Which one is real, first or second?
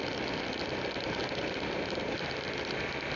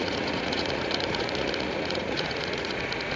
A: first